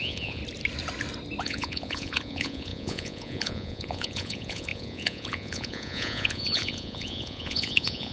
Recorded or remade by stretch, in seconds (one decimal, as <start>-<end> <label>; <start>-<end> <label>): 0.0-0.4 remade; 0.4-1.4 recorded; 1.4-8.1 remade